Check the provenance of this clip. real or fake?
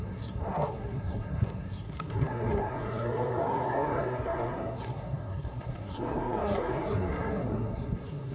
fake